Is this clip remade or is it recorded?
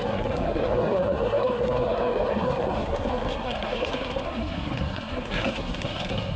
remade